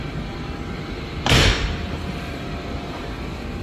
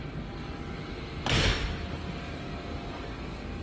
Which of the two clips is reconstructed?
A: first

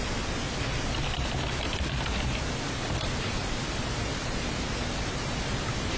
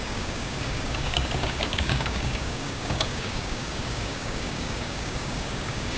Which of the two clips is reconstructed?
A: second